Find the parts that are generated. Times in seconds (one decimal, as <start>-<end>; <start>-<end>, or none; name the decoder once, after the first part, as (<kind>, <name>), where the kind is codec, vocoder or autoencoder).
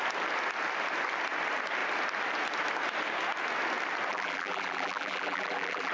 4.1-5.9 (vocoder, BigVGAN v2)